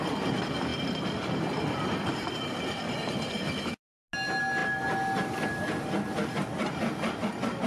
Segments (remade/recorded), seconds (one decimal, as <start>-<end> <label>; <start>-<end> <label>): 0.0-7.7 recorded